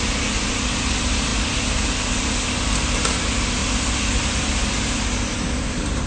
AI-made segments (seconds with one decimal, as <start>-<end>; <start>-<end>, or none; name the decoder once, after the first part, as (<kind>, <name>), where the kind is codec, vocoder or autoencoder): none